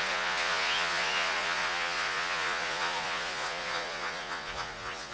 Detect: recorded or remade remade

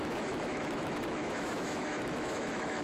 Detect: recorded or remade remade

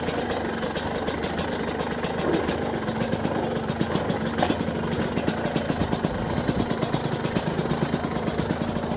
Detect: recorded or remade recorded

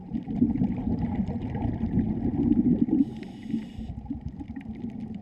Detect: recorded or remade recorded